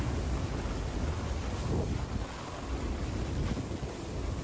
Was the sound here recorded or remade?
recorded